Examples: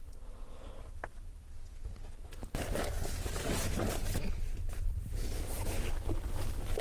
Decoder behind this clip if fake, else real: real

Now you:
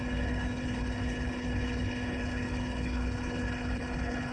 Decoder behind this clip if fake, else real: fake, codec, HILCodec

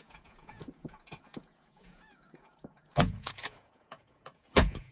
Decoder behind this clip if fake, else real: fake, vocoder, Vocos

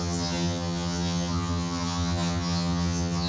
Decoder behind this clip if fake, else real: fake, vocoder, HiFi-GAN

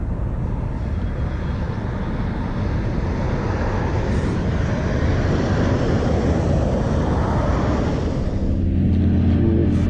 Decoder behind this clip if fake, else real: real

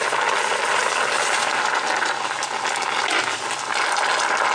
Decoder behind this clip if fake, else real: real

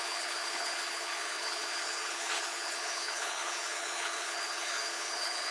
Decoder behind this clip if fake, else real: fake, codec, HILCodec